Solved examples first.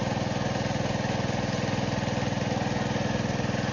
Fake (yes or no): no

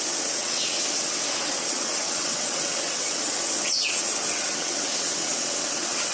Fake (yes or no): yes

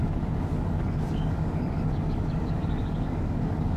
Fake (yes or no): yes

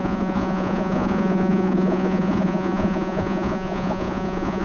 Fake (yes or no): yes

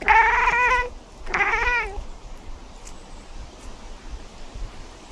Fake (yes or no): no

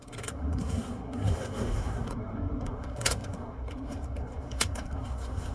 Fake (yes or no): yes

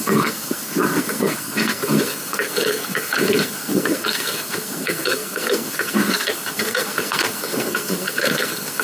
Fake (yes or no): yes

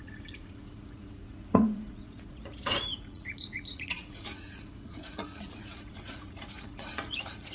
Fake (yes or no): yes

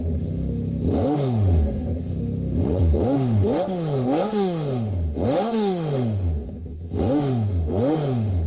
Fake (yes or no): yes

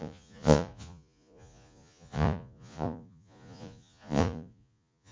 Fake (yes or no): yes